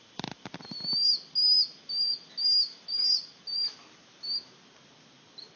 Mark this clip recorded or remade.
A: recorded